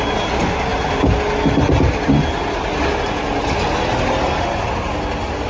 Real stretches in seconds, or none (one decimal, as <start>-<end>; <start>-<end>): 0.0-5.5